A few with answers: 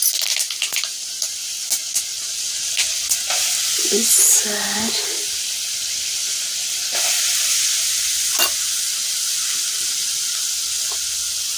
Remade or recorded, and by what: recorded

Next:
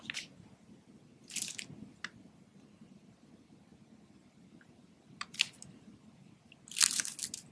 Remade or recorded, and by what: recorded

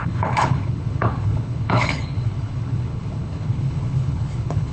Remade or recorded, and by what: remade, codec, HILCodec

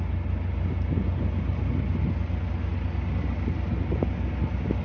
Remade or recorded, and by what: recorded